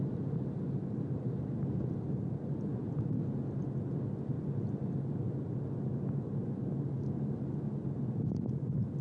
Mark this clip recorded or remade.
recorded